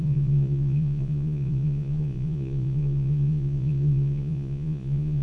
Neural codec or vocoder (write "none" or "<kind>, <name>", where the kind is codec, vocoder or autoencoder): vocoder, Vocos